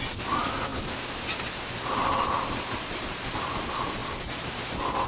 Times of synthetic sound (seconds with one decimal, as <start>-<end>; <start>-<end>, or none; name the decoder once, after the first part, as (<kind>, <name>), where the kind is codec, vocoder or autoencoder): 0.7-1.2 (vocoder, BigVGAN v2); 2.0-3.5; 4.0-4.5